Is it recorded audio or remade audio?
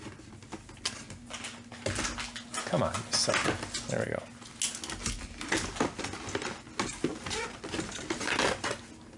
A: recorded